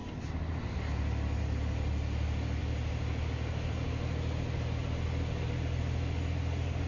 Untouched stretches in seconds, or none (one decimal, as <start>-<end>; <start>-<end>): 0.0-6.9